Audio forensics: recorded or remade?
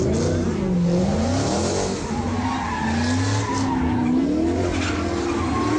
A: recorded